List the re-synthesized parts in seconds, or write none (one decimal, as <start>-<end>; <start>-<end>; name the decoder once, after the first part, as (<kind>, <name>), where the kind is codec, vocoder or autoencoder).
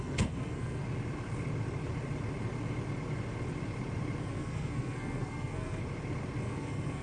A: 0.0-0.8 (codec, SNAC); 4.2-5.8; 6.4-7.0